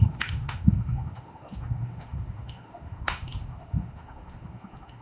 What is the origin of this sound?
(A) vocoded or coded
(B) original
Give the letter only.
A